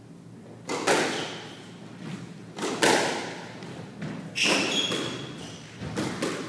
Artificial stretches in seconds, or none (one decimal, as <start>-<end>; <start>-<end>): none